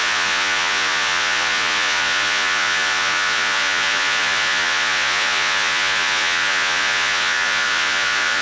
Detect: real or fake fake